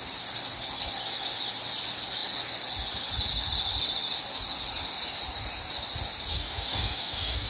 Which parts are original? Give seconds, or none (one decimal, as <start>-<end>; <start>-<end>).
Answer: 0.0-6.3